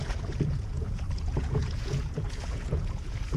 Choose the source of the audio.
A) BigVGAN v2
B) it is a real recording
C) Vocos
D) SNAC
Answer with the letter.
C